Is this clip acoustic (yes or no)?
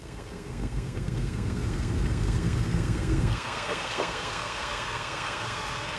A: no